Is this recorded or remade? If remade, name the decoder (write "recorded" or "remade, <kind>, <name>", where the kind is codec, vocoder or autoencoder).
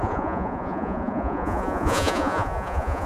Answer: remade, vocoder, Vocos